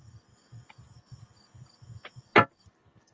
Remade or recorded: recorded